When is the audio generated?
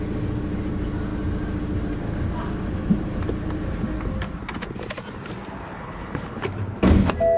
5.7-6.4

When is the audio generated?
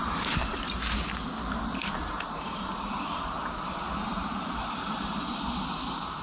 1.4-5.1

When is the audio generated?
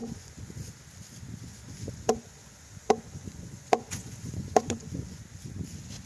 0.0-0.7; 1.5-5.2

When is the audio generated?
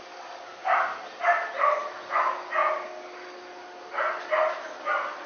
none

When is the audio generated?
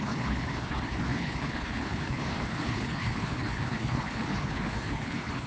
0.0-5.5